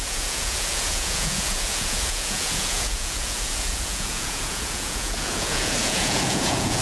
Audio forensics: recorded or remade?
remade